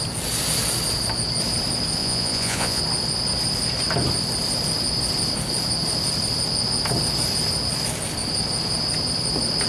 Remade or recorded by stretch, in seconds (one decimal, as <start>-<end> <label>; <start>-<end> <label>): 0.0-2.0 recorded; 2.0-2.8 remade; 2.8-9.7 recorded